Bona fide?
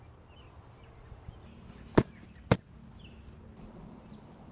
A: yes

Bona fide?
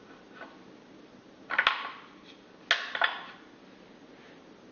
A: yes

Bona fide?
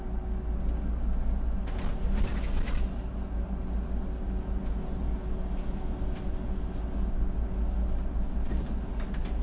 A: yes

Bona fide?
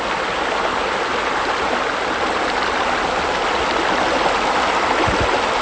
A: yes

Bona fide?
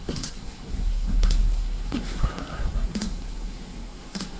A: no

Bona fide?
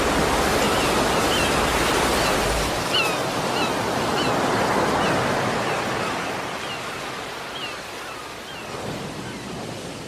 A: yes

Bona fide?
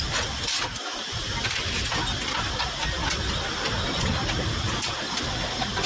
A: yes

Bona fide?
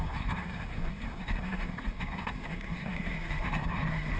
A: no